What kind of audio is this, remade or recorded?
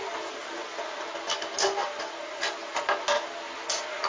recorded